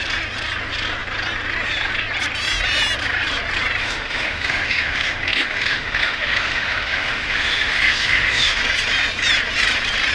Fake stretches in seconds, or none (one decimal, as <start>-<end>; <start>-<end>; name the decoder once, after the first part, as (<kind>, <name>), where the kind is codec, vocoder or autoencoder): 3.8-8.6 (autoencoder, DAC-VAE)